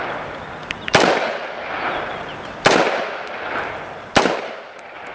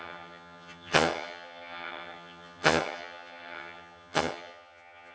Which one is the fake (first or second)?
second